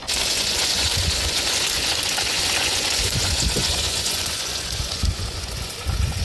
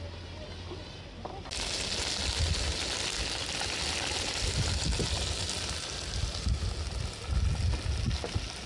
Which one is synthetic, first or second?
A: first